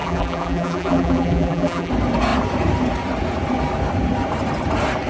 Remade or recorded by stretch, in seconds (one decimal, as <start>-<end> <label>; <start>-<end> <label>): 0.0-1.9 remade; 1.9-5.1 recorded